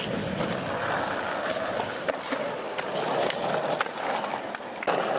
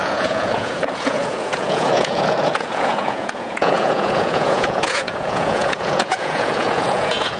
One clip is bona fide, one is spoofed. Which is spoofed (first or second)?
second